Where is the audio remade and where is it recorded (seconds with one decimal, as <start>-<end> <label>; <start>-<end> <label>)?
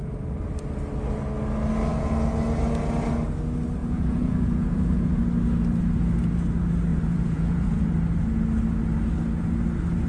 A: 0.0-3.8 recorded; 3.8-5.2 remade; 5.2-6.9 recorded; 6.9-7.9 remade; 7.9-10.1 recorded